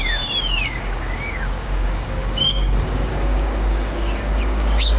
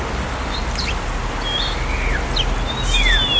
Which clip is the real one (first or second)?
second